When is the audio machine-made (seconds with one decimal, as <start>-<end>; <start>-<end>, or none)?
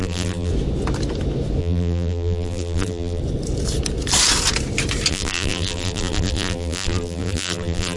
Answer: 0.0-0.5; 1.6-3.2; 5.1-8.0